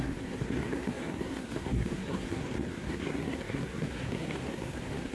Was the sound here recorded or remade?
remade